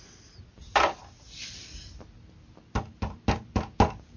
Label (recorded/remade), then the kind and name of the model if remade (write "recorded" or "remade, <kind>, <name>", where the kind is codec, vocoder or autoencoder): recorded